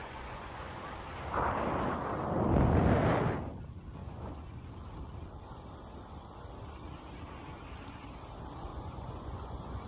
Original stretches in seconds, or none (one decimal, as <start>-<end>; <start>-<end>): 0.8-4.0; 4.7-8.7